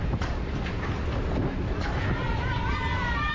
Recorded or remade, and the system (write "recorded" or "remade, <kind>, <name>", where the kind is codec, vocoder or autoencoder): recorded